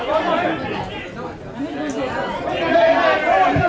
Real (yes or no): yes